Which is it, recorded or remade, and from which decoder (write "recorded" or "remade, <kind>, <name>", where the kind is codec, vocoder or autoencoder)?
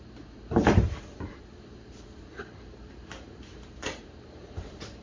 remade, vocoder, BigVGAN v2